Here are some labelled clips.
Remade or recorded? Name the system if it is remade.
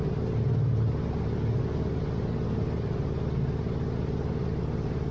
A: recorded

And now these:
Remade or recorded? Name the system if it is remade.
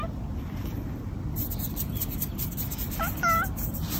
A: recorded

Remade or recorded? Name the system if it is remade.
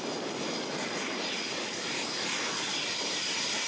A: recorded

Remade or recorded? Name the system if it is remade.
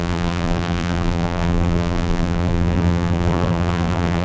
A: remade, vocoder, BigVGAN v2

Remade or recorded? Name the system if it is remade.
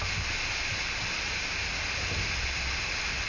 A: recorded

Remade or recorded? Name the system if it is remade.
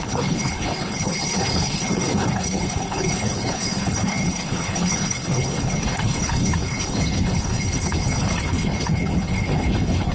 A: remade, codec, HILCodec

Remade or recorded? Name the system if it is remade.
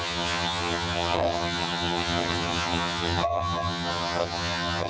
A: remade, vocoder, HiFi-GAN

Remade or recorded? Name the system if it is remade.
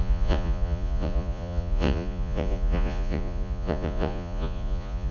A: remade, vocoder, Vocos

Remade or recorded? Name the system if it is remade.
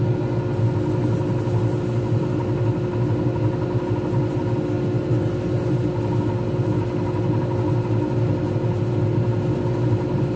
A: recorded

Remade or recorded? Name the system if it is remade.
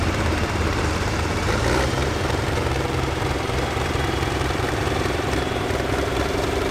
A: remade, vocoder, BigVGAN v2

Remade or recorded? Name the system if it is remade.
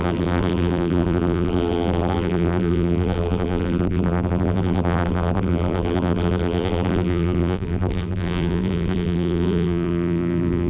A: remade, vocoder, BigVGAN v2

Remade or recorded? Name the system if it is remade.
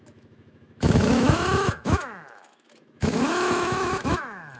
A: remade, autoencoder, DAC-VAE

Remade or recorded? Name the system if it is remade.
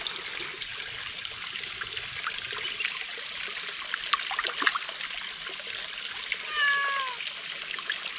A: recorded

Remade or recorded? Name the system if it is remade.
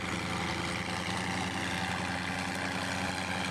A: recorded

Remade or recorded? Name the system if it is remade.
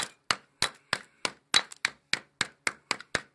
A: recorded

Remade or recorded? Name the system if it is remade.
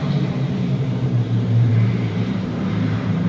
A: remade, vocoder, BigVGAN v2